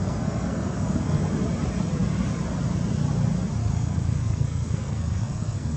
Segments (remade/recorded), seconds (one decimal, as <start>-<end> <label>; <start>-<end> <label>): 0.0-1.2 remade; 1.2-3.6 recorded; 3.6-5.8 remade